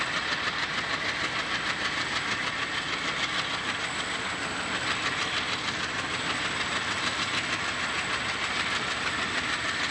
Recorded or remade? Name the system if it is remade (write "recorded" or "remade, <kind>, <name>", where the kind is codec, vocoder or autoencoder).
recorded